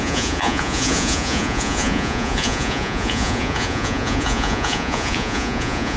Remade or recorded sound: remade